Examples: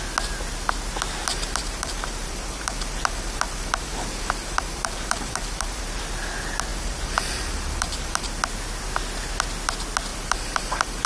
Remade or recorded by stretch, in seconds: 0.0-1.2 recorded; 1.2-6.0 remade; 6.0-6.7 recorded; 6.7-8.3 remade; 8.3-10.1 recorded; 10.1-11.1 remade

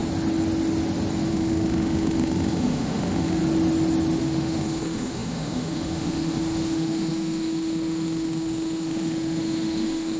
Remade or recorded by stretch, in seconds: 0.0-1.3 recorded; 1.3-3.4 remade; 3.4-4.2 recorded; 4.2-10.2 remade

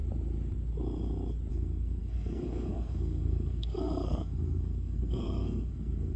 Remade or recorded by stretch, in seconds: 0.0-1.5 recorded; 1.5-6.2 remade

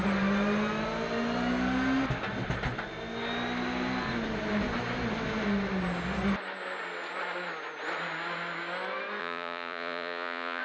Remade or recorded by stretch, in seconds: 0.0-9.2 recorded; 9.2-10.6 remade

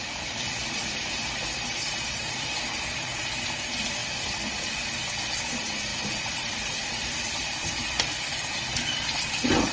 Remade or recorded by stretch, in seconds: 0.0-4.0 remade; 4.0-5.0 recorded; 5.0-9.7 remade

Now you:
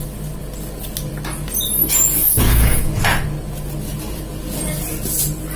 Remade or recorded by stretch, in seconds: 0.0-2.1 recorded; 2.1-3.0 remade; 3.0-5.6 recorded

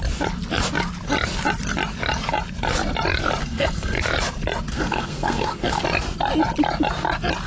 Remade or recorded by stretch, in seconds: 0.0-3.4 recorded; 3.4-4.0 remade; 4.0-4.7 recorded; 4.7-5.8 remade; 5.8-7.5 recorded